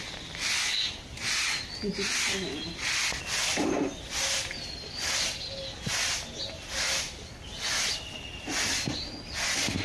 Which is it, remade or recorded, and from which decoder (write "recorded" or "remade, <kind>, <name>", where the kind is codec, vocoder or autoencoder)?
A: recorded